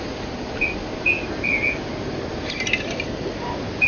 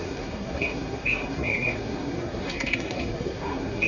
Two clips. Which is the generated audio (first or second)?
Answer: second